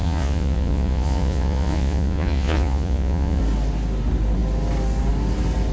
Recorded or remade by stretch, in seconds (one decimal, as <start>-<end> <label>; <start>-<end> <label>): 0.0-3.4 remade; 3.4-5.7 recorded